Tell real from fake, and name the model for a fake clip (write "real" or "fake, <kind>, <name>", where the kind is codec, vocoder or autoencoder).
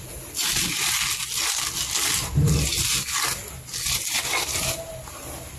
real